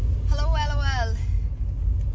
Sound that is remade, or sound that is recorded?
recorded